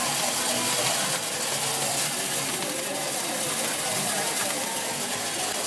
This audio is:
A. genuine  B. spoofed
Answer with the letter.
A